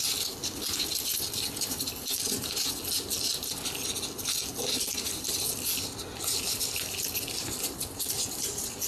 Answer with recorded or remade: recorded